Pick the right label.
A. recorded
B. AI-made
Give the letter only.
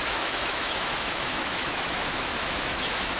B